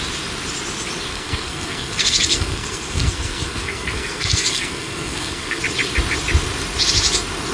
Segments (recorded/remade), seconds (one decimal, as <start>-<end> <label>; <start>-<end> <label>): 0.0-1.1 recorded; 1.1-5.6 remade; 5.6-7.5 recorded